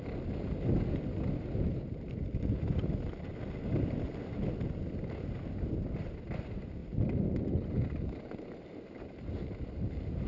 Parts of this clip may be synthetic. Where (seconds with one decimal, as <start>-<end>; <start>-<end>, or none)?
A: none